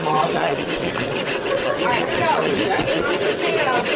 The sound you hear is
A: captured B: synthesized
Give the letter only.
B